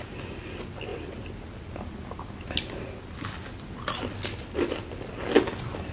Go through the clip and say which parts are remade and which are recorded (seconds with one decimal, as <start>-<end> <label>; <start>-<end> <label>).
0.0-5.9 recorded